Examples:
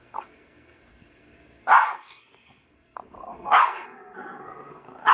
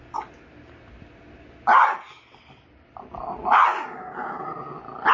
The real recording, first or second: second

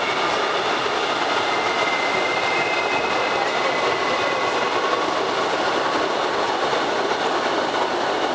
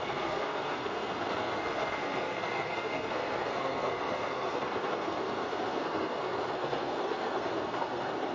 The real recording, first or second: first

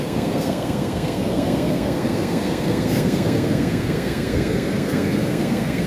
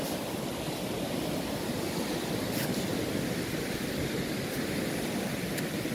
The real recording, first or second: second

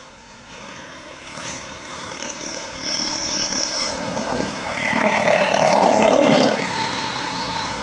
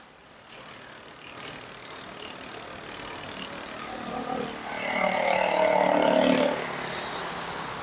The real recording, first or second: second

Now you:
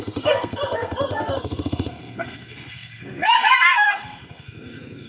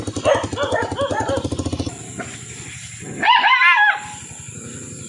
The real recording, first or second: second